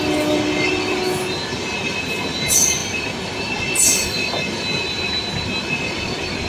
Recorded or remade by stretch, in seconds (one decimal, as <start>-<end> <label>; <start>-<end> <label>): 0.0-6.5 recorded